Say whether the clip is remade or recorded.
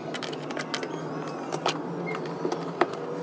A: recorded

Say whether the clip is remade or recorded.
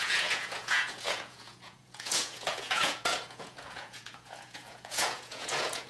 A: remade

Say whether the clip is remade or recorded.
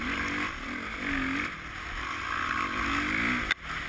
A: recorded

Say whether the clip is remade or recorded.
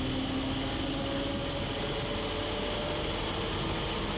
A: recorded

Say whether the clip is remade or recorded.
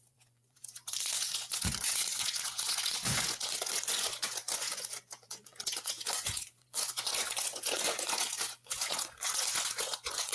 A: remade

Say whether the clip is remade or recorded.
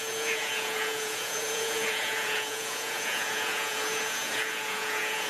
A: remade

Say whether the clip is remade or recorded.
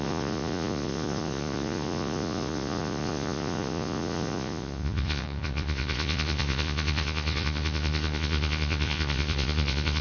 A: remade